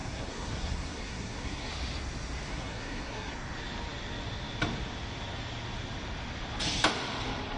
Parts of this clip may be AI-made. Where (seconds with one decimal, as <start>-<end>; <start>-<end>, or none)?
0.0-1.7; 2.5-3.3